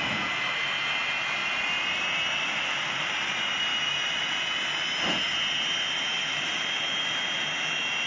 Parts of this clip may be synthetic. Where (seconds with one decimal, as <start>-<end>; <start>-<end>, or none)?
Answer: 1.4-3.1; 6.2-7.0

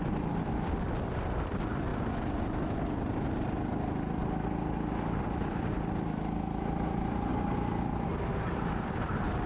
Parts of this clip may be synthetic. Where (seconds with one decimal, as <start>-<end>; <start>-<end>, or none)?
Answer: 0.0-1.9; 4.9-7.3; 8.3-9.5